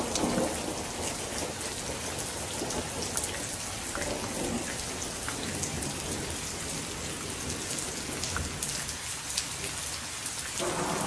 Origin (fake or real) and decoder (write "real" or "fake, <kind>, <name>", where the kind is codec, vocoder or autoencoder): real